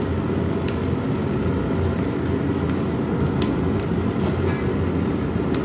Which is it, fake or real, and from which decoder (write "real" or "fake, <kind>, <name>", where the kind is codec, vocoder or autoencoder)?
real